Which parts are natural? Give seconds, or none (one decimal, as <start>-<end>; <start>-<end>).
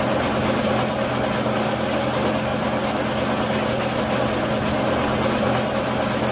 0.0-6.3